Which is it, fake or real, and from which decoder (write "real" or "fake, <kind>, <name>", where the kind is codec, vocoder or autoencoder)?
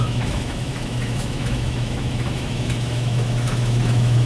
fake, autoencoder, DAC-VAE